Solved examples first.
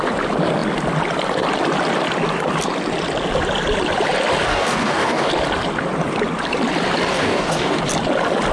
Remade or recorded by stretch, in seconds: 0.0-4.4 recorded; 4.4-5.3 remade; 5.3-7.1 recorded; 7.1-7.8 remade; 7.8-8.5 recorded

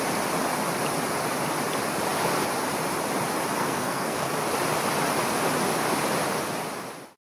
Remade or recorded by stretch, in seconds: 0.0-3.6 recorded; 3.6-4.3 remade; 4.3-7.3 recorded

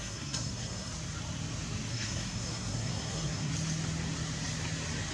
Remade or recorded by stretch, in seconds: 0.0-0.9 remade; 0.9-1.9 recorded; 1.9-3.5 remade; 3.5-5.1 recorded

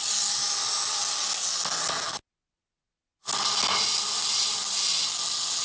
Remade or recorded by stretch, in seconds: 0.0-5.6 recorded

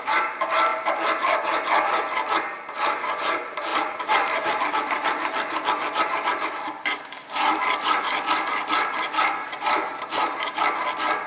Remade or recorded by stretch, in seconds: 0.0-3.7 recorded; 3.7-4.7 remade; 4.7-6.3 recorded; 6.3-7.0 remade; 7.0-9.4 recorded; 9.4-10.6 remade; 10.6-11.3 recorded

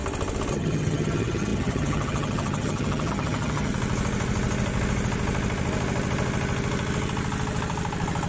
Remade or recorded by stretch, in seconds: 0.0-0.5 recorded; 0.5-3.7 remade; 3.7-8.3 recorded